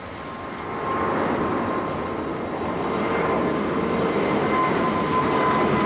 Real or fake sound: real